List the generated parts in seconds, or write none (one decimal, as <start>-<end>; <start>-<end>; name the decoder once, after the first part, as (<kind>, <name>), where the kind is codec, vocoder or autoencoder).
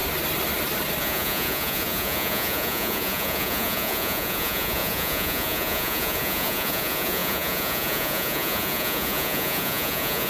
1.0-10.3 (vocoder, Vocos)